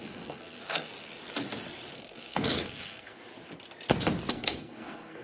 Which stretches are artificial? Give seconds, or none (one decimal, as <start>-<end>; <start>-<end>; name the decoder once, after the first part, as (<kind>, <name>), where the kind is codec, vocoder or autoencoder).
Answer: 0.0-0.9 (codec, SNAC); 1.9-3.2; 4.3-5.2